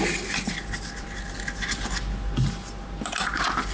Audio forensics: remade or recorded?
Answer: recorded